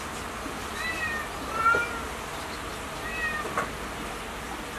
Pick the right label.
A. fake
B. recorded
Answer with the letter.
B